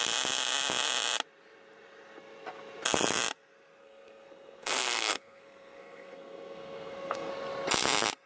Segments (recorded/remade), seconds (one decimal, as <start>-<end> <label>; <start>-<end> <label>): 0.0-3.8 recorded; 3.8-7.3 remade; 7.3-8.3 recorded